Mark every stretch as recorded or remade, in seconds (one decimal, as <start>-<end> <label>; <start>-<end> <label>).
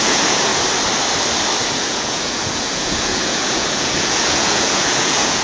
0.0-0.5 remade; 0.5-1.6 recorded; 1.6-5.4 remade